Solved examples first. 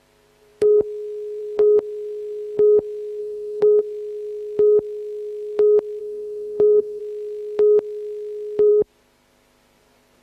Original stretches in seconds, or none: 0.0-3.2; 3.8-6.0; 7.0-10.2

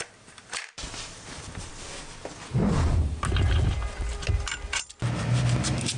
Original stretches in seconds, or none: 0.0-0.4; 1.7-6.0

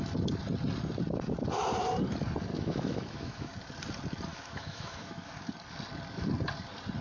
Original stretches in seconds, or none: 0.0-2.5; 3.5-4.3; 5.3-7.0

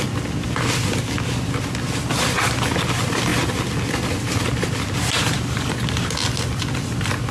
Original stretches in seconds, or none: 0.0-7.3

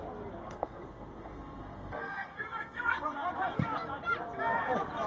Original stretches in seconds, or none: 0.0-0.4; 3.3-5.1